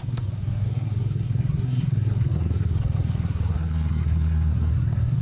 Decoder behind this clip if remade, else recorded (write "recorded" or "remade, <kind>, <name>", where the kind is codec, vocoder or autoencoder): remade, codec, SNAC